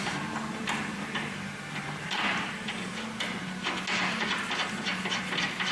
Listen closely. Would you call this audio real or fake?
real